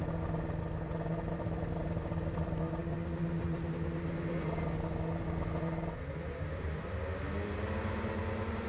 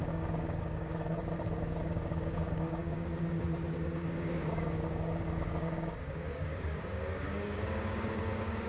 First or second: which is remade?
second